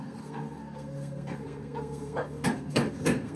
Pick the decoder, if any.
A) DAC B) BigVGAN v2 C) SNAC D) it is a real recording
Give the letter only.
C